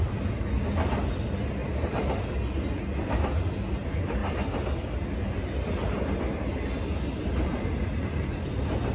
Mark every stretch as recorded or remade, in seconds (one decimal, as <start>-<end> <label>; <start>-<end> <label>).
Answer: 0.0-8.9 recorded